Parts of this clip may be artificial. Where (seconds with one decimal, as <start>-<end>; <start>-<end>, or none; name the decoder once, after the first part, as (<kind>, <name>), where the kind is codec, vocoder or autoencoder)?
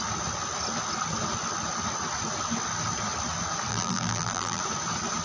3.7-4.6 (vocoder, BigVGAN v2)